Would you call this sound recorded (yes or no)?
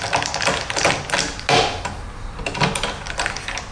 yes